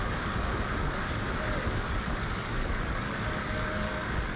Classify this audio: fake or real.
fake